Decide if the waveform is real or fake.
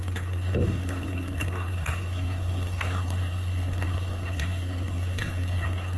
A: fake